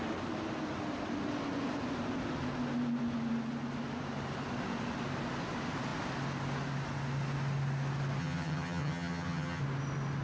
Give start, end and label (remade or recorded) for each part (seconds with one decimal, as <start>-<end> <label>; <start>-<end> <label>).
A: 0.0-8.2 recorded; 8.2-9.6 remade; 9.6-10.2 recorded